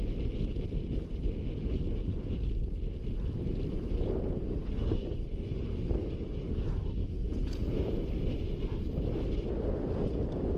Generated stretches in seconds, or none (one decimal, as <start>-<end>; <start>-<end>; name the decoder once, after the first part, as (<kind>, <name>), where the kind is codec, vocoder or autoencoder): 7.0-8.1 (vocoder, Vocos)